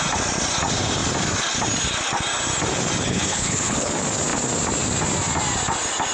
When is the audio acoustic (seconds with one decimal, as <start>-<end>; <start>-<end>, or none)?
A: 0.0-3.1; 3.9-6.1